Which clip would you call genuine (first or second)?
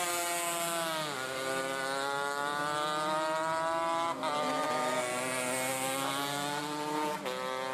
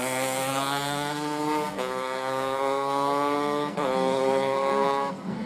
first